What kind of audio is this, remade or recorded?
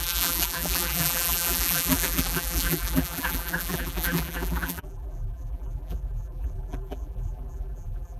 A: remade